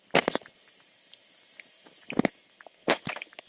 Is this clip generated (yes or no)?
no